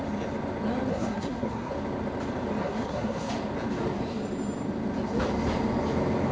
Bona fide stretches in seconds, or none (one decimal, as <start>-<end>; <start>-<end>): 0.0-0.9; 1.7-2.6; 3.3-6.3